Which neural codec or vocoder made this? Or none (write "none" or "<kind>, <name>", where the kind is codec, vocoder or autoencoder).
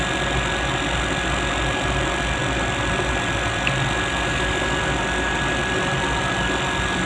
none